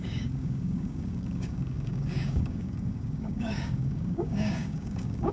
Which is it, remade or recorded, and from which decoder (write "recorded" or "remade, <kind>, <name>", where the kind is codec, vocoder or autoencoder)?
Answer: remade, codec, DAC